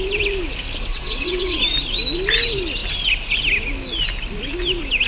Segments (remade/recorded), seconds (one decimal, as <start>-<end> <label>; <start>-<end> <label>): 0.0-0.9 recorded; 0.9-1.6 remade; 1.6-5.1 recorded